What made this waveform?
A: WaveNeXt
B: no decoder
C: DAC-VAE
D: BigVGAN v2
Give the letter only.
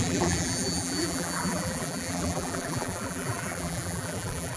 D